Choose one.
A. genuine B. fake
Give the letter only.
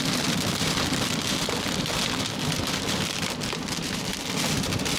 B